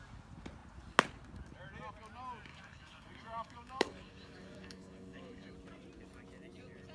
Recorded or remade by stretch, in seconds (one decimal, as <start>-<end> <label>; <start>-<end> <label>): 0.0-2.5 recorded; 2.5-5.5 remade; 5.5-6.9 recorded